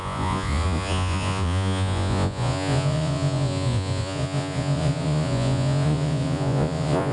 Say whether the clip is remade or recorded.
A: remade